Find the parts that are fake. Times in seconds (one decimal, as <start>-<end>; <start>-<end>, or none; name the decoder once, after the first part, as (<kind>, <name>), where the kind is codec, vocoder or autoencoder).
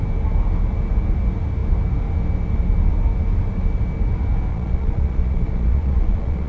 4.5-6.5 (vocoder, Vocos)